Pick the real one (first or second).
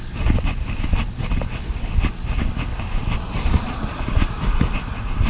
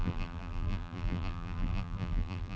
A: first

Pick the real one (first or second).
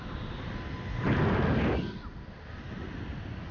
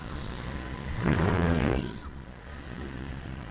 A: first